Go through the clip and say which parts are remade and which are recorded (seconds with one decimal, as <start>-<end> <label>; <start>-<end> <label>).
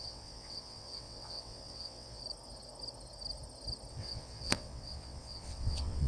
0.0-2.2 remade; 2.2-3.9 recorded; 3.9-6.1 remade